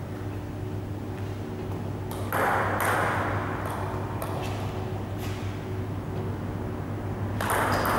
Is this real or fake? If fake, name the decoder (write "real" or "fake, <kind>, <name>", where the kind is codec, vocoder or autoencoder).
real